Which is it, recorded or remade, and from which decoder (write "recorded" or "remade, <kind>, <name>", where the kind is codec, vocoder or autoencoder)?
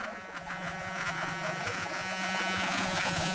remade, vocoder, Vocos